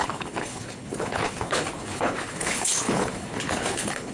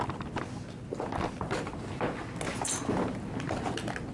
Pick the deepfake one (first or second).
first